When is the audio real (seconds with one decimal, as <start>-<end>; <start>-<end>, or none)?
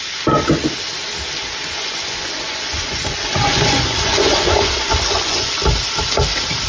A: 0.0-1.6; 5.5-6.7